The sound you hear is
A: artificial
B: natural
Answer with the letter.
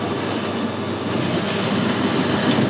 B